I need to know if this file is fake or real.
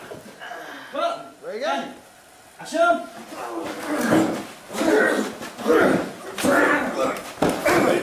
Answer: real